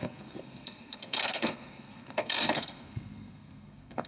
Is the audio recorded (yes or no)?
no